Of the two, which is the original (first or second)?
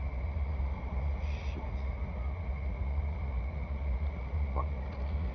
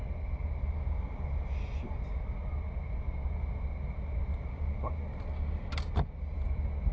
second